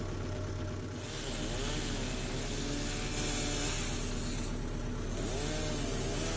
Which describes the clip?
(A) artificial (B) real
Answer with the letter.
B